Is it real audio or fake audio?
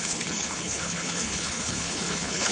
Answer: fake